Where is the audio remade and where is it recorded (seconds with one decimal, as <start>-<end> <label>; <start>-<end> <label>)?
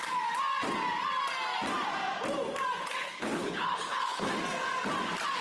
0.0-2.8 recorded; 2.8-4.3 remade; 4.3-5.4 recorded